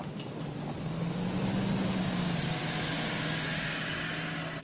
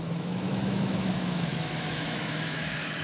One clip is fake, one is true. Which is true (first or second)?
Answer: first